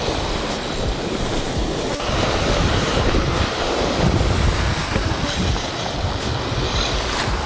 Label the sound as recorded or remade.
recorded